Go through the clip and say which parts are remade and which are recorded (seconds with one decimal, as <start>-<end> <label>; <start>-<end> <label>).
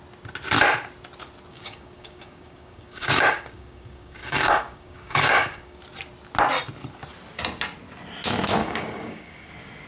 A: 0.0-1.5 recorded; 1.5-5.8 remade; 5.8-8.6 recorded; 8.6-9.5 remade; 9.5-9.9 recorded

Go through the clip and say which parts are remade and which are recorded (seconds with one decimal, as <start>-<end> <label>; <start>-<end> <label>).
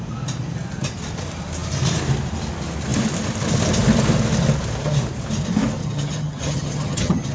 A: 0.0-5.8 recorded; 5.8-7.3 remade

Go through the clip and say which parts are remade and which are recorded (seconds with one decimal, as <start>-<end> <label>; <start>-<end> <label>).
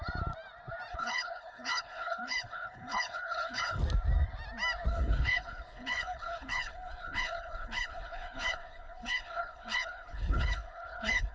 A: 0.0-0.9 recorded; 0.9-3.8 remade; 3.8-4.9 recorded; 4.9-11.3 remade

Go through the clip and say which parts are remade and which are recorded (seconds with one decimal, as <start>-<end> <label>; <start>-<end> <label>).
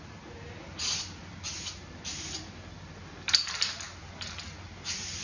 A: 0.0-5.2 recorded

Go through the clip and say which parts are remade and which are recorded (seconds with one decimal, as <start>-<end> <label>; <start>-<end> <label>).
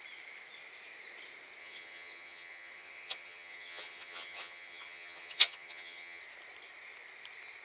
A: 0.0-1.6 recorded; 1.6-6.2 remade; 6.2-7.6 recorded